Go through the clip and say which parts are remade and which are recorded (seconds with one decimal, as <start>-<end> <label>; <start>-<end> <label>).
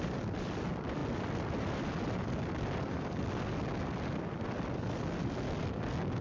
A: 0.0-6.2 recorded